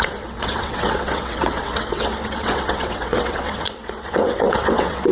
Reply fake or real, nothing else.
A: fake